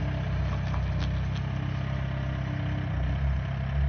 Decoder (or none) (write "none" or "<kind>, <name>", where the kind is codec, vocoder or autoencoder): none